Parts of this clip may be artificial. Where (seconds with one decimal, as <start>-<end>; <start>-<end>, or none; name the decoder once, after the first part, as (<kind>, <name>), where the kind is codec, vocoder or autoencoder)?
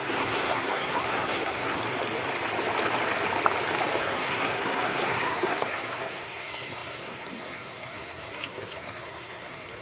0.0-1.8 (codec, SNAC); 4.0-9.8